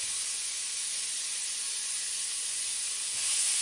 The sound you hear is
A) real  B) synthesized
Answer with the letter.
B